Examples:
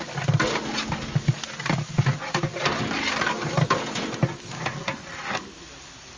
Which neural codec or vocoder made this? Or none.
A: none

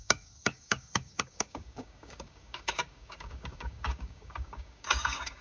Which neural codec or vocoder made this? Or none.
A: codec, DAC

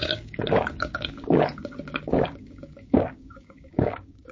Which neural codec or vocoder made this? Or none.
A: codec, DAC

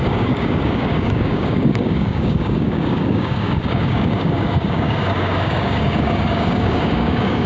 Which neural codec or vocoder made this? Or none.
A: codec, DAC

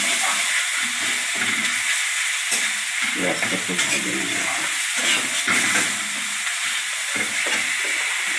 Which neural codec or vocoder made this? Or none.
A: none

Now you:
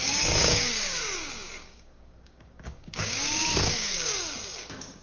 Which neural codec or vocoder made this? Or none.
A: codec, DAC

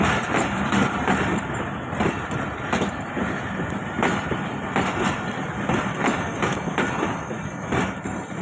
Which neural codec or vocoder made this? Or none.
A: none